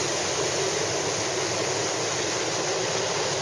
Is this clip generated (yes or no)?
no